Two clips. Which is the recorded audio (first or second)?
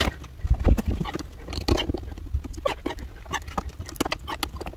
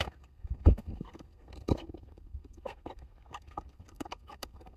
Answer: first